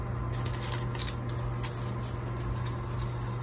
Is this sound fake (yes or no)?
no